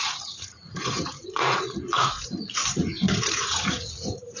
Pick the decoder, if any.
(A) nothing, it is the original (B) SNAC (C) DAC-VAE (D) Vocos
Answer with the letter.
D